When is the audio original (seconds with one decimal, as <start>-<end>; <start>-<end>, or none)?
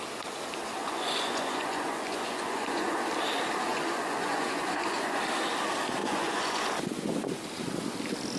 0.0-0.8; 3.0-3.7; 5.2-6.0; 6.7-8.4